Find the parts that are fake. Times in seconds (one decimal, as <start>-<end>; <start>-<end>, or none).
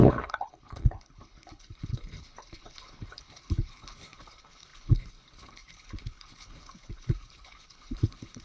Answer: 0.0-8.4